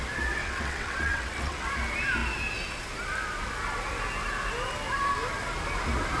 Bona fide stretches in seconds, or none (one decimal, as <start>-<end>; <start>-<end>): 0.0-0.4; 1.7-6.2

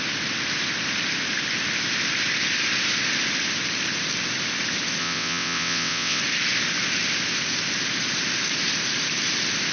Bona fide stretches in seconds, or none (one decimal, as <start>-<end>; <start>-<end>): 0.0-5.0; 6.2-9.7

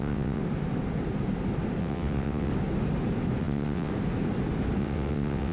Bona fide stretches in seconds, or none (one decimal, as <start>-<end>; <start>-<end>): 0.4-1.8; 2.5-3.4; 3.9-4.8

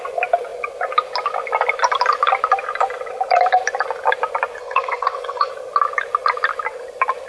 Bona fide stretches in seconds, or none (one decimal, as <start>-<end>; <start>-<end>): 0.0-4.6; 5.5-7.3